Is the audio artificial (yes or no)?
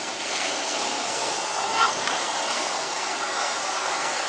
yes